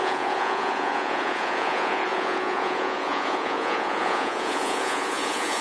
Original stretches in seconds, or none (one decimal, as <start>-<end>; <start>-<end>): none